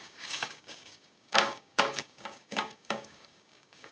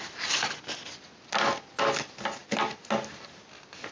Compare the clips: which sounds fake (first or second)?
first